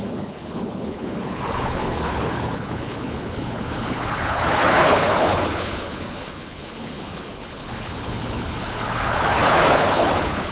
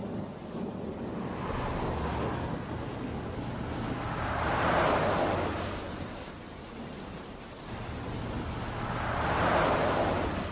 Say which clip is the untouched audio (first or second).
second